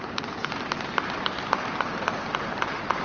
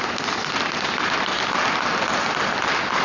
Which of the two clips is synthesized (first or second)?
first